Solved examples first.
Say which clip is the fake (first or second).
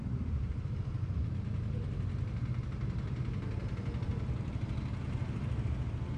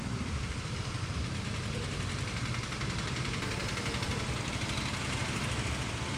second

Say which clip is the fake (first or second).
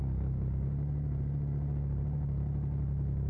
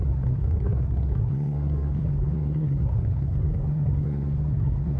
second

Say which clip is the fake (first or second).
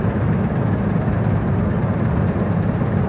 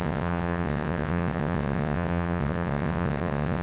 second